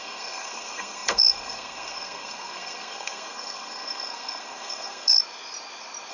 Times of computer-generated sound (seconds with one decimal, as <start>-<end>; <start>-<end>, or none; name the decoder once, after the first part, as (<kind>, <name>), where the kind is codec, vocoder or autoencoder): 0.0-5.2 (codec, SNAC)